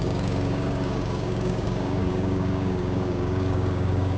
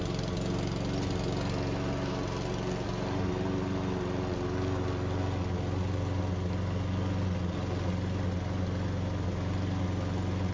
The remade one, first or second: first